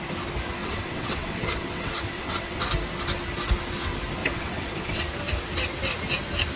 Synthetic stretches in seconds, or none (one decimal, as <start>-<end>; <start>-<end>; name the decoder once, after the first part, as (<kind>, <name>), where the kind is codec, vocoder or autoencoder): 0.6-2.6 (vocoder, WaveNeXt); 4.2-5.0